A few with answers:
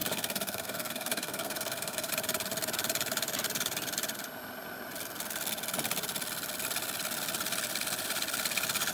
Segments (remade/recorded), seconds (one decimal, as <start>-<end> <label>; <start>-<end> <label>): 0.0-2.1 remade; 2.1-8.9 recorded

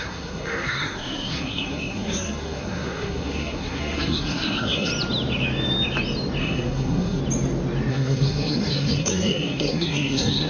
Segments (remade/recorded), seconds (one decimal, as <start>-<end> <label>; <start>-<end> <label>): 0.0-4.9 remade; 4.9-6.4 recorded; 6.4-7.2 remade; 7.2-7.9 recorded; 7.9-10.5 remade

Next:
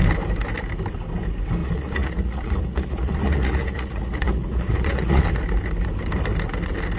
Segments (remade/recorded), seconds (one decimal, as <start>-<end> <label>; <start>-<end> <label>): 0.0-1.6 recorded; 1.6-5.2 remade; 5.2-7.0 recorded

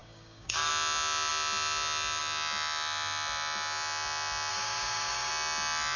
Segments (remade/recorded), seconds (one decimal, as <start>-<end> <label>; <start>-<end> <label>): 0.0-0.7 remade; 0.7-4.5 recorded; 4.5-5.3 remade; 5.3-6.0 recorded

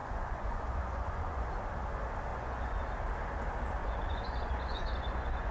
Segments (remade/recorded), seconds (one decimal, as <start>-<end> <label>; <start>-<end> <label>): 0.0-1.5 remade; 1.5-2.3 recorded; 2.3-2.8 remade; 2.8-3.8 recorded; 3.8-5.5 remade

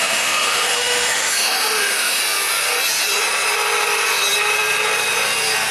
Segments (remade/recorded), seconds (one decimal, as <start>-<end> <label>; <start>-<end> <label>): 0.0-2.2 remade; 2.2-5.7 recorded

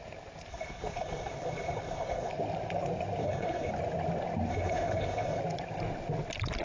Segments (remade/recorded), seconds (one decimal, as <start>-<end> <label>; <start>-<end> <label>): 0.0-0.5 recorded; 0.5-2.3 remade; 2.3-3.2 recorded; 3.2-3.7 remade; 3.7-4.5 recorded; 4.5-5.4 remade; 5.4-6.6 recorded

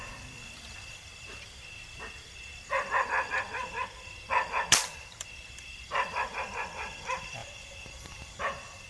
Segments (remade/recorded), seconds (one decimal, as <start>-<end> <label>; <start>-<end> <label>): 0.0-1.1 remade; 1.1-4.9 recorded; 4.9-8.9 remade